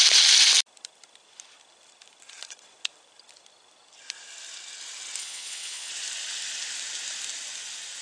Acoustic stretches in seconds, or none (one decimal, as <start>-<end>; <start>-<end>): 0.0-5.2; 5.9-8.0